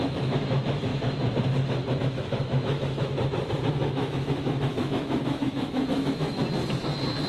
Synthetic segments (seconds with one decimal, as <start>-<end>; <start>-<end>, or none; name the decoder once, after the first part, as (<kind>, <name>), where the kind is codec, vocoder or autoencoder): 0.0-0.9 (autoencoder, DAC-VAE); 2.0-3.1; 3.7-6.4